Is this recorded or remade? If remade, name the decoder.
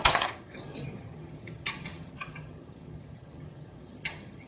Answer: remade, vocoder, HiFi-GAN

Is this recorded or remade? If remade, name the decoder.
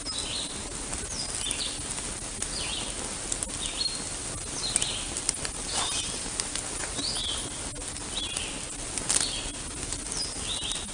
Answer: recorded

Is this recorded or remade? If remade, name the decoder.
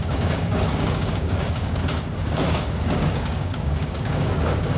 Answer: remade, codec, DAC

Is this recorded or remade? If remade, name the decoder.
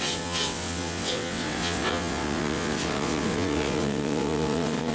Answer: remade, vocoder, WaveNeXt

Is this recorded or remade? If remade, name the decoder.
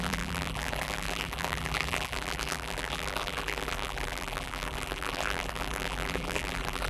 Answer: remade, vocoder, BigVGAN v2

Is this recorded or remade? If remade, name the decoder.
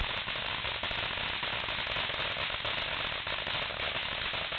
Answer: recorded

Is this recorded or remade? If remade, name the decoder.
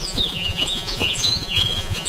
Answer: remade, vocoder, Vocos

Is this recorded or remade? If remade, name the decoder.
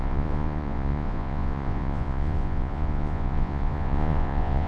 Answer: remade, vocoder, Vocos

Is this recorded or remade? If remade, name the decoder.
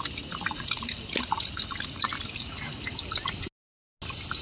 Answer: recorded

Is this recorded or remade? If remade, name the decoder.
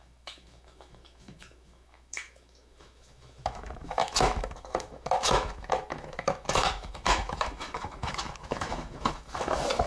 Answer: remade, autoencoder, DAC-VAE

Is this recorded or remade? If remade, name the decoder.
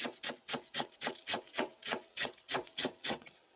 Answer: remade, vocoder, WaveNeXt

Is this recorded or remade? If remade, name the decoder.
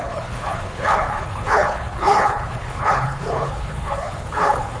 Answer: remade, codec, HILCodec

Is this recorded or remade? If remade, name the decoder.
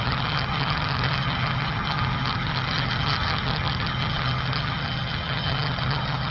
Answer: remade, vocoder, HiFi-GAN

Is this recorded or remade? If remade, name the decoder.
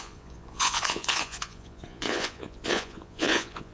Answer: remade, vocoder, Vocos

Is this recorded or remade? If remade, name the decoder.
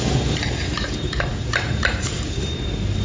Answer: remade, vocoder, BigVGAN v2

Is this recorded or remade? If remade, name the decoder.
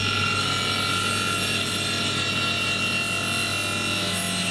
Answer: recorded